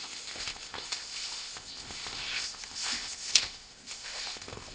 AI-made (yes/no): yes